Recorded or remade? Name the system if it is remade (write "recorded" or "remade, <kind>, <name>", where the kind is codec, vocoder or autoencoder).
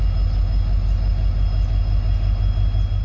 recorded